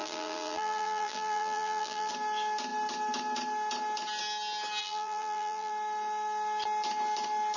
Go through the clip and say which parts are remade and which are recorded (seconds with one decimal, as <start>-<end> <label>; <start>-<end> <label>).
0.0-2.1 remade; 2.1-4.8 recorded; 4.8-5.7 remade; 5.7-7.6 recorded